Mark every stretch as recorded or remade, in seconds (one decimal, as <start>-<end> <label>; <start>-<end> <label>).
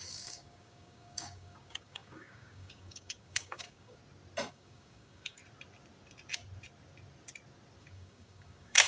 0.0-4.0 remade; 4.0-4.5 recorded; 4.5-5.4 remade; 5.4-7.8 recorded; 7.8-8.9 remade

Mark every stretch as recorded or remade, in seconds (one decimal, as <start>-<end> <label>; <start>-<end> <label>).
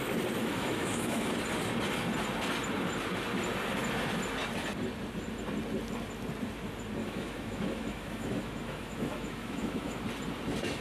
0.0-0.4 recorded; 0.4-1.3 remade; 1.3-7.0 recorded; 7.0-10.0 remade; 10.0-10.8 recorded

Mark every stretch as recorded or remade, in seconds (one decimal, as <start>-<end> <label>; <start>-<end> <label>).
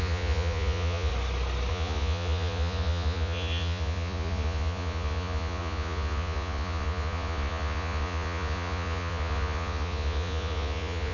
0.0-1.1 remade; 1.1-1.7 recorded; 1.7-11.1 remade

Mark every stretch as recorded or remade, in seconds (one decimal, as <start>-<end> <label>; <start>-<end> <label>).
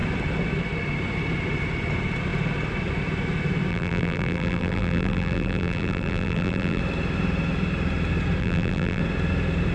0.0-3.7 recorded; 3.7-6.8 remade; 6.8-8.4 recorded; 8.4-9.0 remade; 9.0-9.7 recorded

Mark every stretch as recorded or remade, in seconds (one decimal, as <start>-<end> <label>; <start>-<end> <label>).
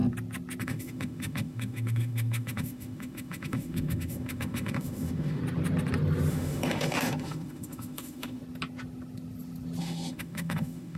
0.0-0.6 recorded; 0.6-5.4 remade; 5.4-6.3 recorded; 6.3-8.4 remade; 8.4-9.8 recorded; 9.8-11.0 remade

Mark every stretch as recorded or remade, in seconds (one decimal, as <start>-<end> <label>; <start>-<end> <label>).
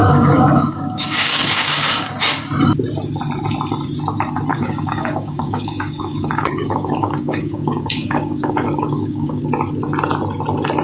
0.0-2.1 remade; 2.1-4.5 recorded; 4.5-9.4 remade; 9.4-10.8 recorded